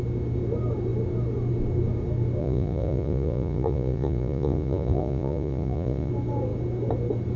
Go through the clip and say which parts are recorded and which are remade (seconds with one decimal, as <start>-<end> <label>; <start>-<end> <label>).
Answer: 0.0-2.4 recorded; 2.4-6.1 remade; 6.1-7.4 recorded